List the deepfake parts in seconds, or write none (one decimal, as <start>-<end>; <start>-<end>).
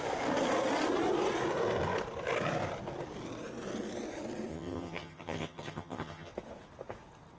4.5-6.3